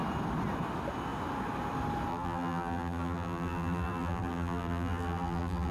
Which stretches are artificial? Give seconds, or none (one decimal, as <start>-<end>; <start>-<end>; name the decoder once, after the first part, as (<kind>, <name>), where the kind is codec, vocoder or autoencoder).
2.1-5.7 (vocoder, BigVGAN v2)